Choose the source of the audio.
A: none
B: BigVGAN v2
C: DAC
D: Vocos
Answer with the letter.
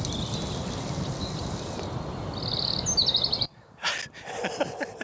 A